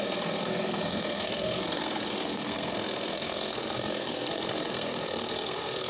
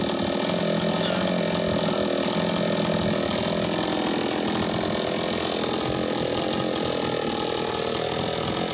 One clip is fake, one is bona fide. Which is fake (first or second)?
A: first